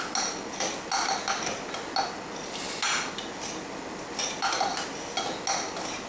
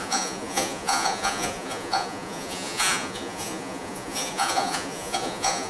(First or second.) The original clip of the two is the first